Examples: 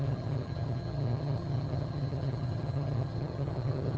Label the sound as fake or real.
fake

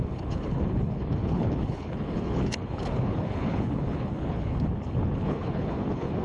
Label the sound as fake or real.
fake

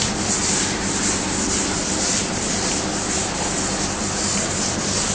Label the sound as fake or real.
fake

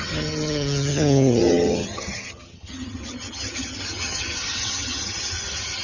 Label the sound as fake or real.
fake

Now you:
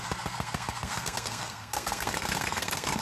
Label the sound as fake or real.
fake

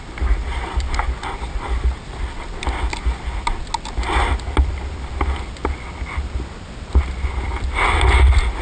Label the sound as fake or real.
real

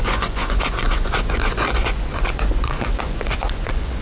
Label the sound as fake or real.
fake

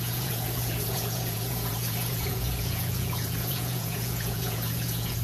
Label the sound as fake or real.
fake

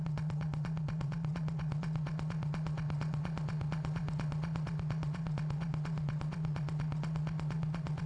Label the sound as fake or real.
fake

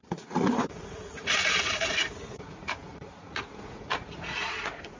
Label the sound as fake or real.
fake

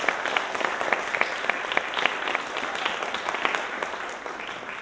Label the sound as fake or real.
real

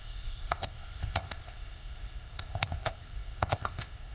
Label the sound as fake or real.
fake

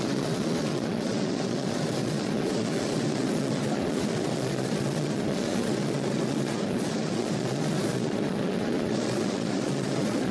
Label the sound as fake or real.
fake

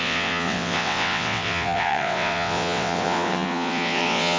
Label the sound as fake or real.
fake